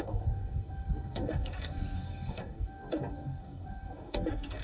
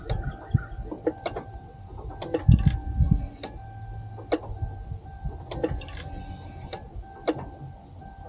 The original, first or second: second